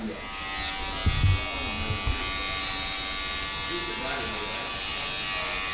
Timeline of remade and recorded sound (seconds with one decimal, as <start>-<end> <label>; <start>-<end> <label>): 0.0-5.7 recorded